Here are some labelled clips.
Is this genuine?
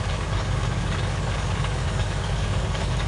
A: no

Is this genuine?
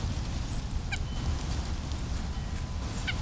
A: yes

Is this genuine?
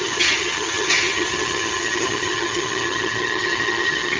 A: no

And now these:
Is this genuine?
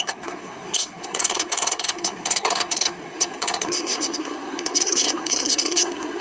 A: no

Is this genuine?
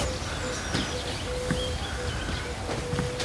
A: yes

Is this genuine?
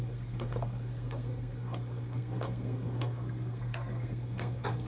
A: no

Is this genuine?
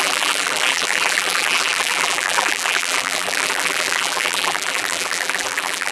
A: no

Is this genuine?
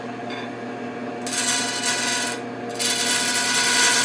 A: yes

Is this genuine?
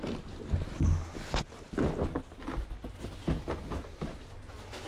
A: yes